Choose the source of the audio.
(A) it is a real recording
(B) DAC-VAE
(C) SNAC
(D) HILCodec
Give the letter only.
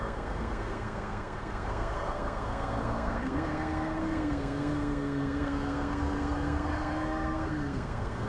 C